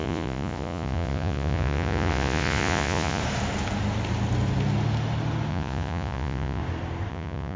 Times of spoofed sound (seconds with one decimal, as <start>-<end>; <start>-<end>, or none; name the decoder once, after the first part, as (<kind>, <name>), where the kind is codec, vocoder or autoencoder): 0.0-3.2 (vocoder, Vocos); 5.5-6.6; 7.1-7.6